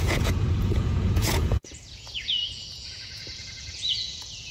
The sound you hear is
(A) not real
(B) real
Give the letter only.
A